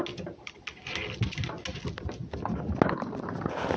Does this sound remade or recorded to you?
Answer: recorded